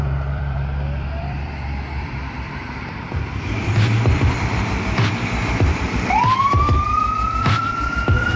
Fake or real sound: fake